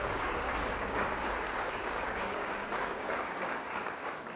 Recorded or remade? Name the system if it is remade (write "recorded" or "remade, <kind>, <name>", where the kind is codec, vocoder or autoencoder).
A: remade, codec, DAC